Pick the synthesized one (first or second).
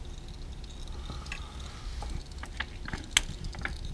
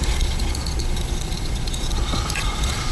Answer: second